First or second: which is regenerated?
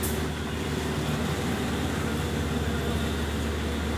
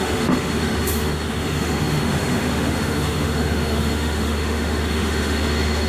second